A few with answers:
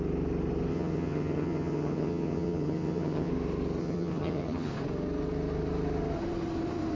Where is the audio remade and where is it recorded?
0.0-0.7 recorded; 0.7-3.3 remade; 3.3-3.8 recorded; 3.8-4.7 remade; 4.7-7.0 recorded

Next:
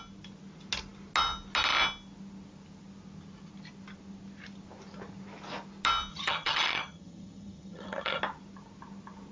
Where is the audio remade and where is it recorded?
0.0-6.1 recorded; 6.1-8.2 remade; 8.2-9.3 recorded

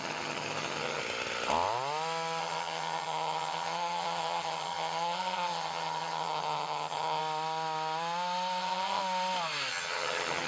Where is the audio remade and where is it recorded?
0.0-1.0 remade; 1.0-2.4 recorded; 2.4-7.2 remade; 7.2-8.6 recorded; 8.6-9.0 remade; 9.0-9.7 recorded; 9.7-10.5 remade

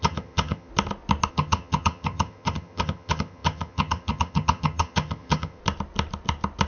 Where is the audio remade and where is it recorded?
0.0-0.7 remade; 0.7-1.3 recorded; 1.3-5.6 remade; 5.6-6.7 recorded

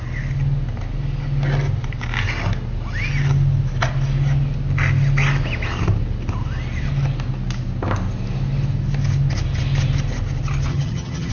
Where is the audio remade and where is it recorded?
0.0-10.7 recorded; 10.7-11.3 remade

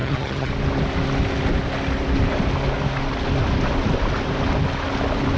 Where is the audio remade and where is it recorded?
0.0-0.5 remade; 0.5-5.4 recorded